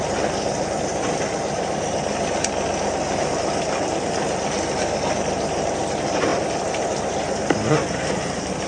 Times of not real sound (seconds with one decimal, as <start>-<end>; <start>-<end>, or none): none